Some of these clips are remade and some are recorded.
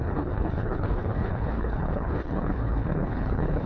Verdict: remade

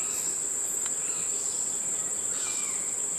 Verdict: recorded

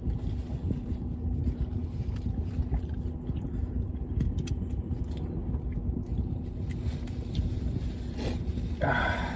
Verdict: recorded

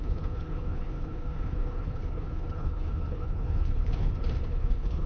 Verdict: remade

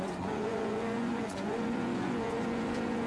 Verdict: remade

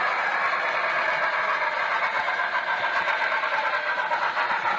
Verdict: recorded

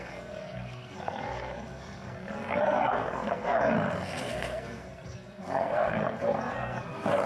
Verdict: remade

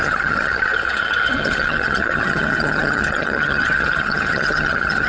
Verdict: remade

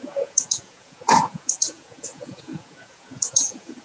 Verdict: remade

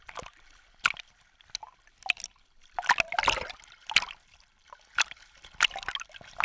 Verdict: recorded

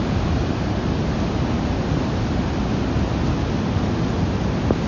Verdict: recorded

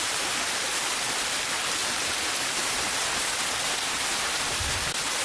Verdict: remade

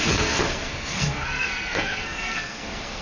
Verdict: remade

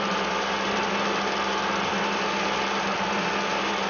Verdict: recorded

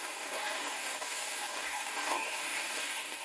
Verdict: remade